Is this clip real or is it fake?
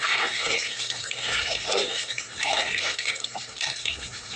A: fake